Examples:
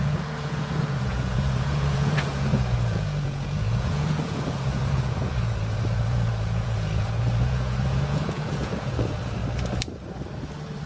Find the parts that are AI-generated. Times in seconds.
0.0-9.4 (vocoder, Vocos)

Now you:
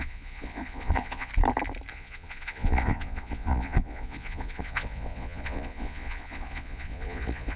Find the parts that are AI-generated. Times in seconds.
0.0-1.3 (vocoder, Vocos); 1.9-7.6

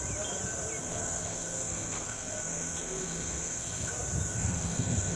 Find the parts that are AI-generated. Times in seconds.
0.8-3.9 (codec, SNAC); 4.3-5.2

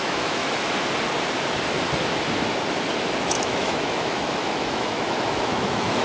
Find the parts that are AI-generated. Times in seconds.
0.0-0.4 (autoencoder, DAC-VAE); 3.2-6.0

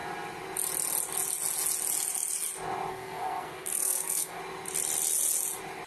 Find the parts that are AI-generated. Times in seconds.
2.9-4.4 (codec, SNAC)

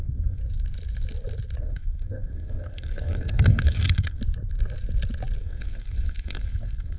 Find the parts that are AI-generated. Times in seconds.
0.0-0.4 (codec, SNAC); 1.6-4.2; 5.4-7.0